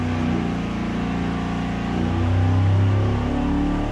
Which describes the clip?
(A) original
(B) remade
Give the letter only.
A